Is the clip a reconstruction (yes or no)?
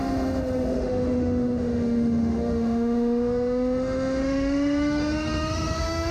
yes